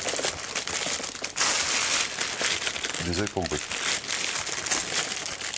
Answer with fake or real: real